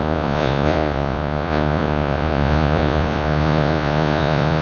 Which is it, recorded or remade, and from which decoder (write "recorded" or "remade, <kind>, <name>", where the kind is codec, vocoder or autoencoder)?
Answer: remade, vocoder, Vocos